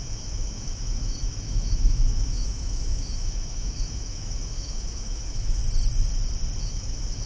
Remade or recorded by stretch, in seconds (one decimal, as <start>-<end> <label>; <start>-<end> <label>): 0.0-5.6 remade; 5.6-6.6 recorded; 6.6-7.3 remade